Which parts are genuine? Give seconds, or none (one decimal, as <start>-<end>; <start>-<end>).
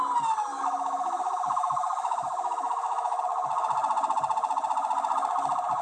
0.0-0.5; 3.2-5.8